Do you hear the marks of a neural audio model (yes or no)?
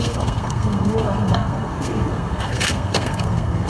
yes